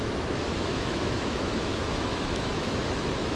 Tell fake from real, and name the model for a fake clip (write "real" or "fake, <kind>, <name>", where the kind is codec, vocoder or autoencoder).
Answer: fake, autoencoder, DAC-VAE